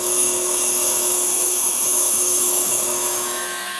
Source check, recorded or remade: remade